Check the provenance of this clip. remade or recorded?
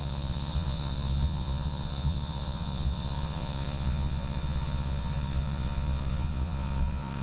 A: remade